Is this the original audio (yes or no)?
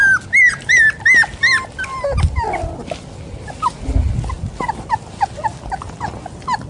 yes